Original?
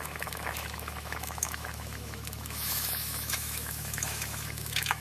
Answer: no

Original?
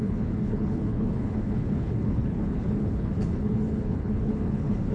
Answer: no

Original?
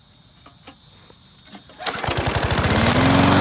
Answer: yes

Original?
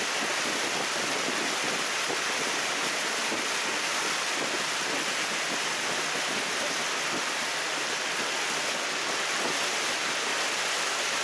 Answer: yes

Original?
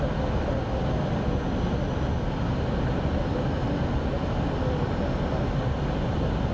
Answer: yes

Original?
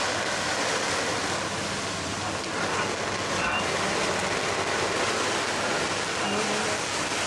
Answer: yes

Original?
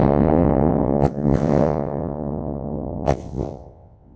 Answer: no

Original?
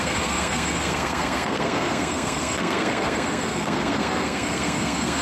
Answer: no